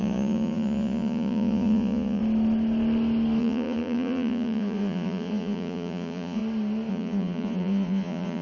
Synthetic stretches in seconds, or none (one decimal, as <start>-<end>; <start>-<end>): 0.0-2.2; 3.4-6.4; 6.9-8.4